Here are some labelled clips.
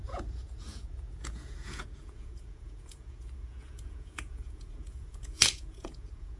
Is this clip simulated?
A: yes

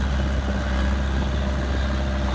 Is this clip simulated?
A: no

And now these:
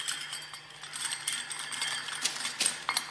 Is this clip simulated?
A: no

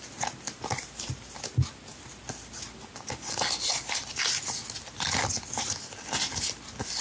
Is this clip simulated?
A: no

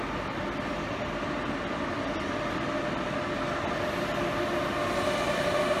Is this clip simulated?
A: no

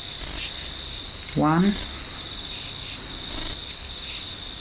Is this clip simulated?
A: no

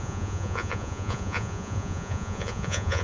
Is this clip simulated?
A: yes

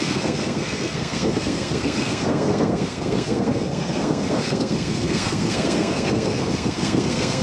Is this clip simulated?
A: yes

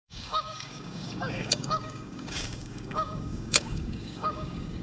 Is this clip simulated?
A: yes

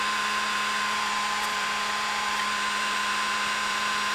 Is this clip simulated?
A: no